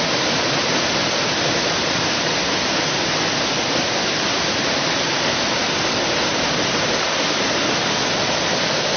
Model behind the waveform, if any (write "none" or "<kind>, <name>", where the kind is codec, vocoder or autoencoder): none